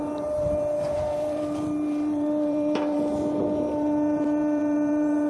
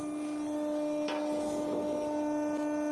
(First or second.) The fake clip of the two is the first